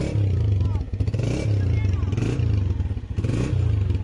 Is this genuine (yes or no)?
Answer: yes